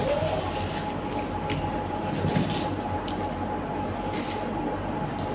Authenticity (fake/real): real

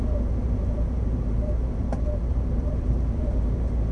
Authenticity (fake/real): fake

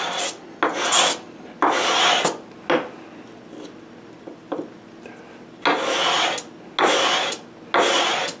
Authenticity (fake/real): real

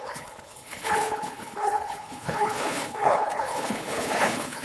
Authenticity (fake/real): fake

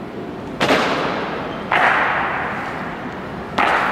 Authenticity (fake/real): real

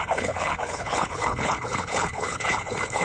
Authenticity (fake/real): fake